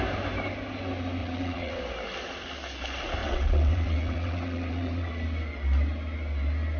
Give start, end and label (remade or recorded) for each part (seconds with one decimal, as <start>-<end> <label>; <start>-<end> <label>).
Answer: 0.0-1.2 recorded; 1.2-1.8 remade; 1.8-3.2 recorded; 3.2-5.1 remade; 5.1-6.8 recorded